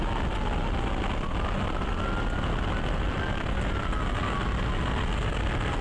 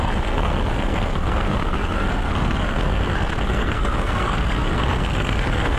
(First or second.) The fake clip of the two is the second